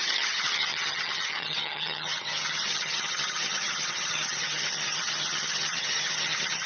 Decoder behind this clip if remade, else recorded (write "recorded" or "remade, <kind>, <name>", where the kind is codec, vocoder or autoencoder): remade, vocoder, HiFi-GAN